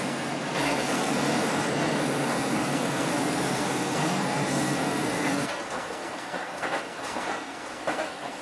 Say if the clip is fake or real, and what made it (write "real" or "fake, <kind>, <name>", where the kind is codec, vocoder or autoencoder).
fake, codec, SNAC